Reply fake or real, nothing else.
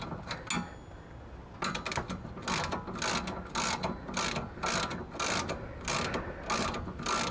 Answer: real